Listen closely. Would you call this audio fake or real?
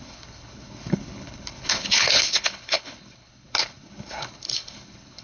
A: fake